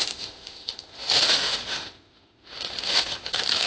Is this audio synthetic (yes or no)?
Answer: yes